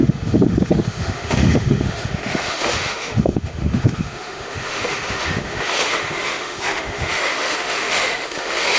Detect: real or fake fake